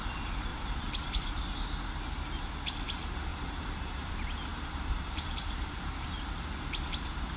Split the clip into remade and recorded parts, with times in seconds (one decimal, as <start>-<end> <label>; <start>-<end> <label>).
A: 0.0-0.5 recorded; 0.5-1.4 remade; 1.4-3.3 recorded; 3.3-4.1 remade; 4.1-4.5 recorded; 4.5-6.3 remade; 6.3-7.4 recorded